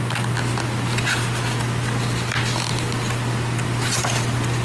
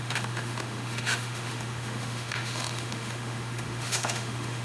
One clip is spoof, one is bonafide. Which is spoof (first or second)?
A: second